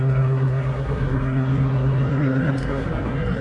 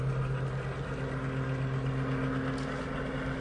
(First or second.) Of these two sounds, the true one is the second